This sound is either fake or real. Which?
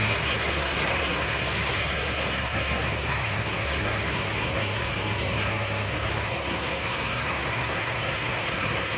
fake